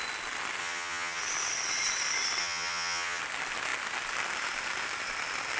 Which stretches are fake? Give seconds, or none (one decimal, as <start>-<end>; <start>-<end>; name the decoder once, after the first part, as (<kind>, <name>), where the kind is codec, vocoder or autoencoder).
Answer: 0.6-1.2 (vocoder, HiFi-GAN); 2.4-3.2